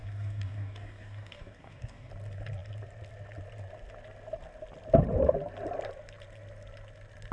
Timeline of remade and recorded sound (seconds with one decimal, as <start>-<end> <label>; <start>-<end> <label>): 0.0-2.1 remade; 2.1-7.3 recorded